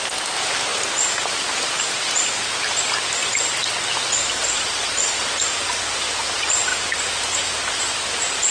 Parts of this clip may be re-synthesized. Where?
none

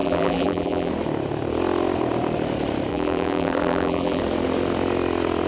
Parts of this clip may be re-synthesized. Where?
0.0-0.9 (vocoder, BigVGAN v2); 2.9-4.2

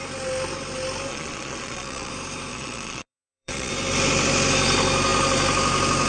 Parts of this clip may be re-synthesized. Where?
1.1-2.1 (vocoder, Vocos); 2.5-3.7

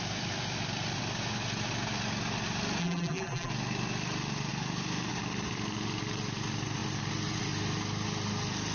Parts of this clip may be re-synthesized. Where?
2.8-3.5 (vocoder, BigVGAN v2)

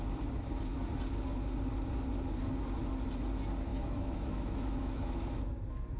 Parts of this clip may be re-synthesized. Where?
3.7-5.3 (autoencoder, DAC-VAE)

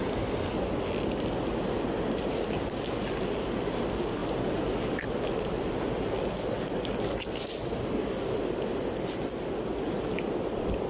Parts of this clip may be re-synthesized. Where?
none

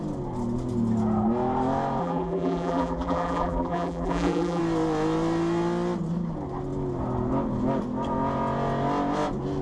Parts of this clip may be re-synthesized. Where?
2.0-4.6 (vocoder, BigVGAN v2)